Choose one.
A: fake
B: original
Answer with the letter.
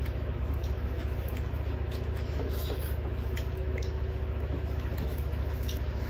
A